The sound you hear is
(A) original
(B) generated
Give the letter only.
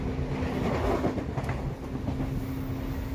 A